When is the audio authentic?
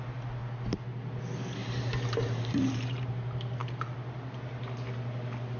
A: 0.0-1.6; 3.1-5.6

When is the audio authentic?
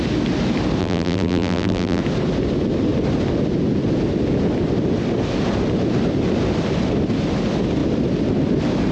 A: 0.0-0.8; 2.0-8.9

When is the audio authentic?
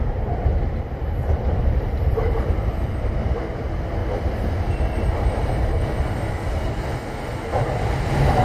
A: 0.0-1.2; 3.1-4.0; 6.6-8.4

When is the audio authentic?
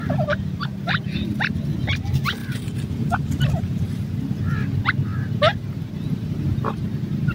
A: 0.0-2.4; 3.8-7.3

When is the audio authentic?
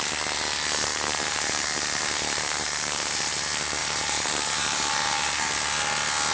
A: 0.0-0.9; 3.4-3.8; 5.5-6.3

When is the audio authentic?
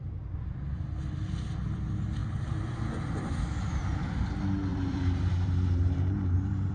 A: 0.0-4.7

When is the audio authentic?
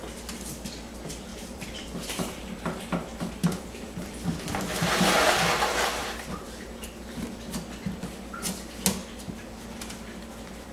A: 0.0-1.3; 4.1-6.0; 7.2-9.0; 9.6-10.7